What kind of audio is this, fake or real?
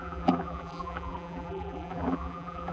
fake